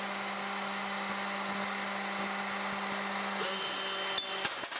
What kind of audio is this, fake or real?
real